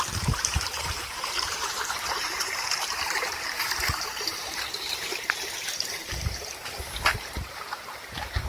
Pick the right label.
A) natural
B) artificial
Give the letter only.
B